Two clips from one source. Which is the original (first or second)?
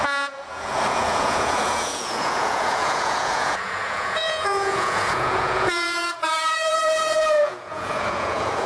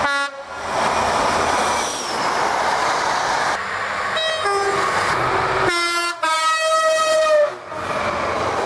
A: second